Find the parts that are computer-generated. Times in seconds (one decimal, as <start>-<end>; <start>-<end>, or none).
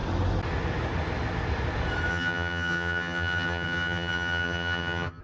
2.1-5.2